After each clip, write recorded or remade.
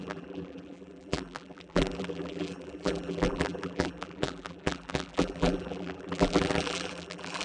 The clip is remade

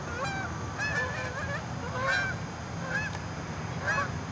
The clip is recorded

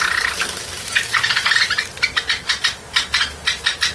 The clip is recorded